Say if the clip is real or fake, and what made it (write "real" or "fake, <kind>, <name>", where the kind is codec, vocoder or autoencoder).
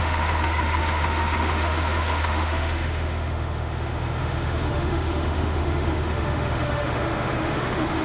fake, autoencoder, DAC-VAE